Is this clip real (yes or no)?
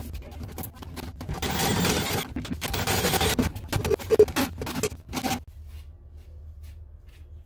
yes